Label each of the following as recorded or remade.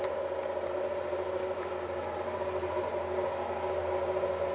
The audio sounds recorded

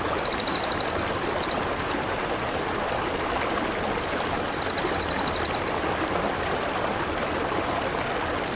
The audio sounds recorded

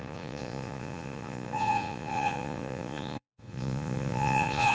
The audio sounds remade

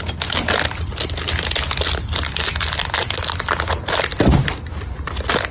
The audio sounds recorded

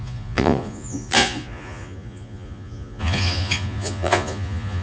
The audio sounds remade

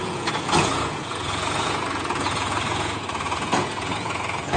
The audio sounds remade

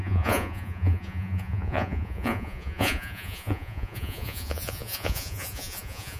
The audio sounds remade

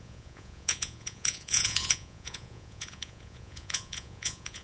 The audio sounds remade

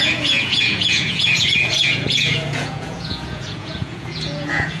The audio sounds remade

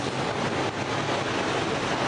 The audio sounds recorded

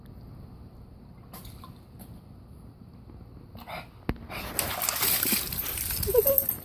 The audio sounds recorded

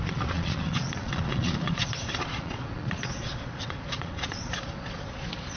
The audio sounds remade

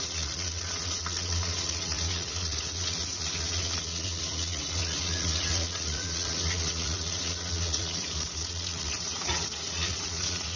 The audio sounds remade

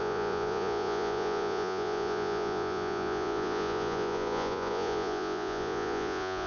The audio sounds remade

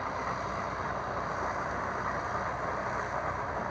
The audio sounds recorded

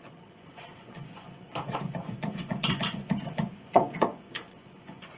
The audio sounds remade